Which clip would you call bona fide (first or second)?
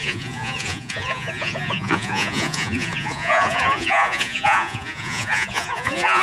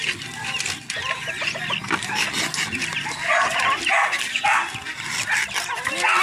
second